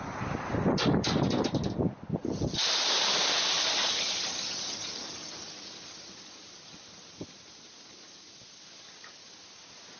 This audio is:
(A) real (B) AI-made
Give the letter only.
A